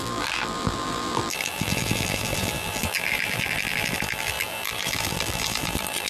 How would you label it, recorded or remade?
remade